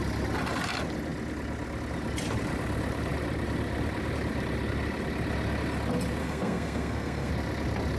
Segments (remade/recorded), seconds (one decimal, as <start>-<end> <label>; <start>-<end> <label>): 0.0-6.2 recorded; 6.2-7.3 remade; 7.3-8.0 recorded